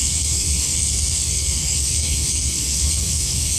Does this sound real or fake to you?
fake